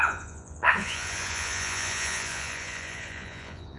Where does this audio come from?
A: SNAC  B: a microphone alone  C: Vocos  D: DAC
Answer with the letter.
C